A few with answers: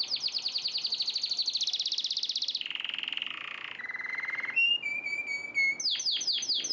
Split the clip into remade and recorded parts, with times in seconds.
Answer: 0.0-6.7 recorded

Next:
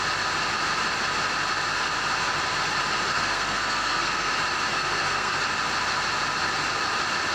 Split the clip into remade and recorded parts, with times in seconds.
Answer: 0.0-3.1 recorded; 3.1-4.3 remade; 4.3-4.7 recorded; 4.7-5.4 remade; 5.4-7.3 recorded

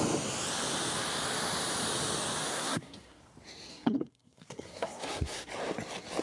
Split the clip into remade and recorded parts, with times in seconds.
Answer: 0.0-2.5 recorded; 2.5-3.2 remade; 3.2-3.7 recorded; 3.7-5.5 remade; 5.5-6.2 recorded

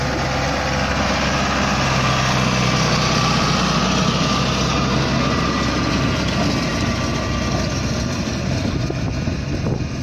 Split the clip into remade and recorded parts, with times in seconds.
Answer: 0.0-10.0 recorded